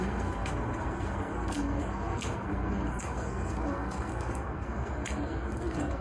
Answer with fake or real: fake